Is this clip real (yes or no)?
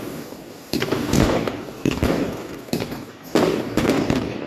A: no